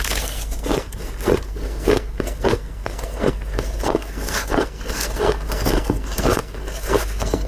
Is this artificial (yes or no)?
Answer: yes